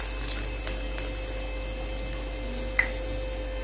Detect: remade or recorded recorded